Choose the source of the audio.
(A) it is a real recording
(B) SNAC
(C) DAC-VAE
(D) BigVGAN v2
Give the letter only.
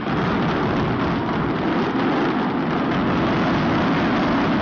A